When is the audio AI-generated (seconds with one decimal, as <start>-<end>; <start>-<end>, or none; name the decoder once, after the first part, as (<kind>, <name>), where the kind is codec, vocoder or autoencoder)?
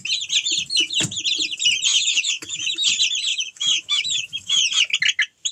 1.9-2.9 (autoencoder, DAC-VAE); 3.3-4.6